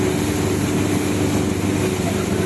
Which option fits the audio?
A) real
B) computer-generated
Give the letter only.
A